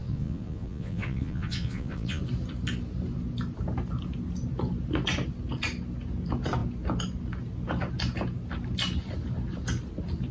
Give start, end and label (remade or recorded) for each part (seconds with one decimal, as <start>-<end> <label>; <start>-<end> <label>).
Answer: 0.0-2.2 remade; 2.2-10.3 recorded